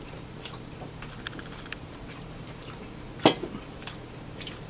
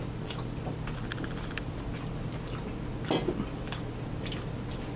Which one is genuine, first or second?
second